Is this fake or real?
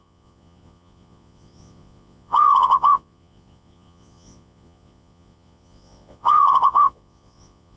fake